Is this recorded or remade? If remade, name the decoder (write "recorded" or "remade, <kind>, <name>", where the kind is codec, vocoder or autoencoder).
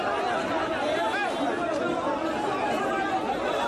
recorded